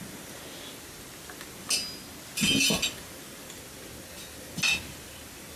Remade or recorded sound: recorded